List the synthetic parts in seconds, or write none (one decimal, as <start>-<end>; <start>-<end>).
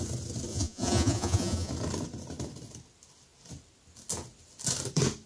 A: 0.5-1.7